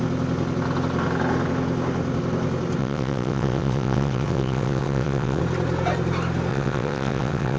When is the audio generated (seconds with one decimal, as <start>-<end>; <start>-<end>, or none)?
2.8-5.4; 6.5-7.6